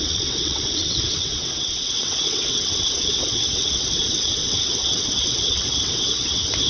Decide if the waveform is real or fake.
fake